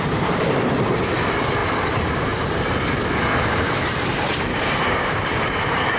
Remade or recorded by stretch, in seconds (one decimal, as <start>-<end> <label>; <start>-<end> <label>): 0.0-6.0 remade